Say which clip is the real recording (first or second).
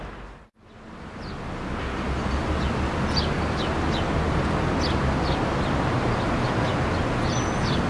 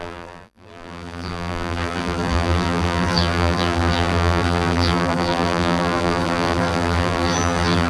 first